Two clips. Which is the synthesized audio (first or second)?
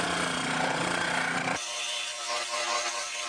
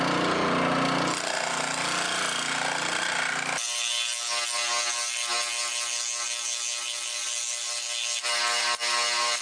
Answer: first